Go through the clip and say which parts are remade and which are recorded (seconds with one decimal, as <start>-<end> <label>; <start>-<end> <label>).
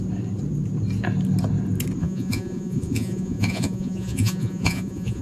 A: 0.0-2.0 recorded; 2.0-5.2 remade